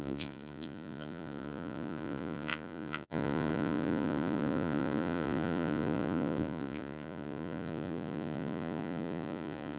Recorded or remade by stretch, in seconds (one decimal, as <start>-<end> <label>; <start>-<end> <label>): 0.0-9.8 remade